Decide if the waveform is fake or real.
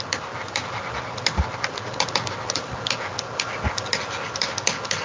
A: real